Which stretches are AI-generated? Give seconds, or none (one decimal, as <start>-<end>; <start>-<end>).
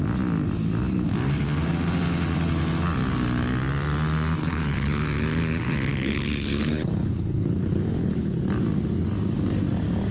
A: 4.4-5.0; 5.9-8.4